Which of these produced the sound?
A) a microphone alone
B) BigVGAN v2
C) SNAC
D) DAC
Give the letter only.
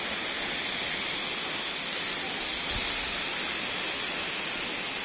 A